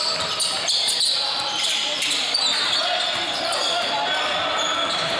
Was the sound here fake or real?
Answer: real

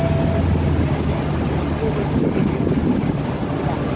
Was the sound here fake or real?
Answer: real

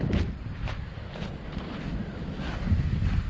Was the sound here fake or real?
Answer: real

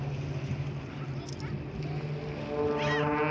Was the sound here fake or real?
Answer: real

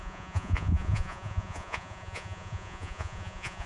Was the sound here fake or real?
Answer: fake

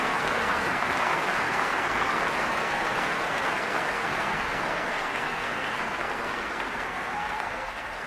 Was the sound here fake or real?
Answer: fake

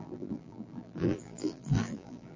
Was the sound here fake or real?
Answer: fake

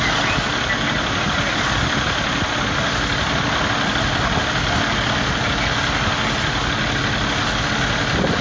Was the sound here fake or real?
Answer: real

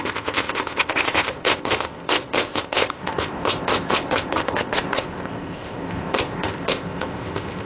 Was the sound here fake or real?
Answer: fake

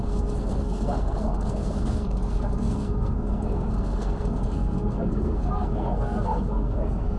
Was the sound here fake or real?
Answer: fake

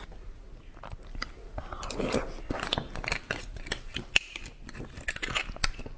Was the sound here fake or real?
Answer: real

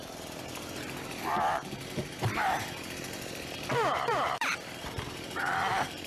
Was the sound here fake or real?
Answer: fake